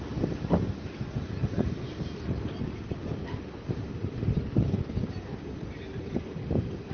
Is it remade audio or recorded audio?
recorded